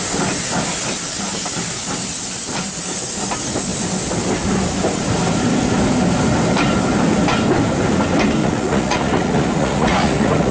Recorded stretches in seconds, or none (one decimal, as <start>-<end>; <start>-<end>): 0.0-8.4